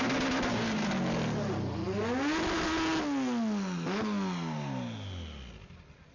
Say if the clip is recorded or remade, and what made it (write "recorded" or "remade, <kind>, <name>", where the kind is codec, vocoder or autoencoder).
recorded